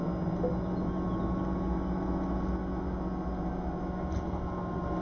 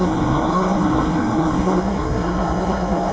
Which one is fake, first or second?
second